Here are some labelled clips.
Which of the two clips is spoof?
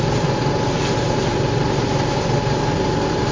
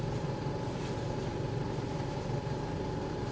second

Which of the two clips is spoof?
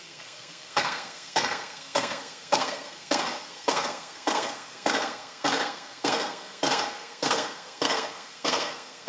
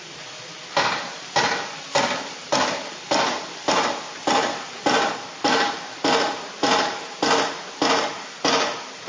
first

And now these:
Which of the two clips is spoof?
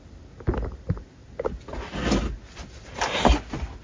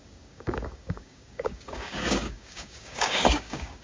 second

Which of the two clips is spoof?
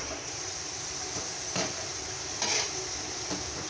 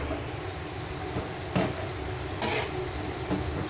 first